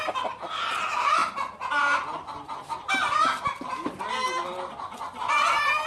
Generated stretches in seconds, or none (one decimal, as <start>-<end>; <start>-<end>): none